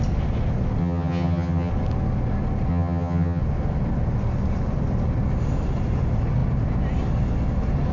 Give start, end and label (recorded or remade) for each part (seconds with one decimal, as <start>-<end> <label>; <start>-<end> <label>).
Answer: 0.0-0.8 recorded; 0.8-1.7 remade; 1.7-2.7 recorded; 2.7-3.4 remade; 3.4-7.9 recorded